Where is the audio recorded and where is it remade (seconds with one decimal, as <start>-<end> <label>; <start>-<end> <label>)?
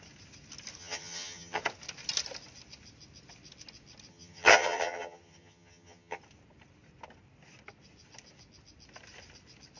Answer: 0.0-0.8 recorded; 0.8-1.6 remade; 1.6-4.1 recorded; 4.1-6.2 remade; 6.2-9.8 recorded